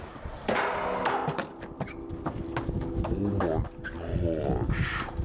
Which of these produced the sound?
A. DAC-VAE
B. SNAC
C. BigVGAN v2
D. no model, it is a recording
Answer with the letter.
D